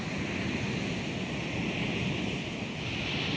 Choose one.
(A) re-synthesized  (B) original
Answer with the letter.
B